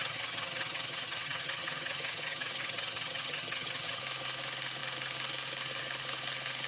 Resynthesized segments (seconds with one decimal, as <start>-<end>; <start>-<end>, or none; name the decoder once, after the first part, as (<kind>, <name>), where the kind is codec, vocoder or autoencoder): 0.0-4.0 (vocoder, HiFi-GAN)